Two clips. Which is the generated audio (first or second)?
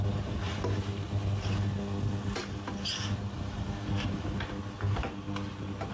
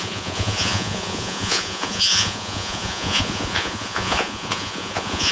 second